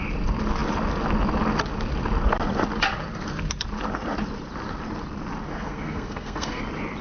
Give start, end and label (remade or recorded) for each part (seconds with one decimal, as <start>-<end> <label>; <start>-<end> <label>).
0.0-5.5 recorded; 5.5-6.6 remade; 6.6-7.0 recorded

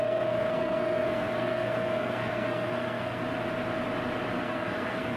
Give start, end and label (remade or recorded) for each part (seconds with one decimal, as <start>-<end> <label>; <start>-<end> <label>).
0.0-3.2 remade; 3.2-4.4 recorded; 4.4-5.2 remade

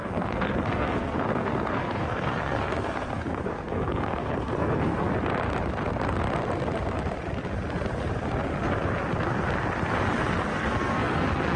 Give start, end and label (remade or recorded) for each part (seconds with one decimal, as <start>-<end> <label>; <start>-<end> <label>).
0.0-5.1 remade; 5.1-10.5 recorded; 10.5-11.6 remade

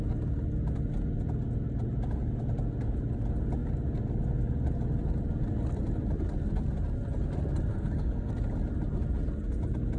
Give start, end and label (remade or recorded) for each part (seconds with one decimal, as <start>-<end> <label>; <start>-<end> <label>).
0.0-7.7 recorded; 7.7-8.3 remade; 8.3-10.0 recorded

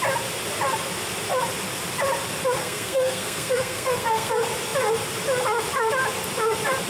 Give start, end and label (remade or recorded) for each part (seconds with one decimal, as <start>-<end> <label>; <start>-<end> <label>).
0.0-2.6 recorded; 2.6-4.3 remade; 4.3-6.9 recorded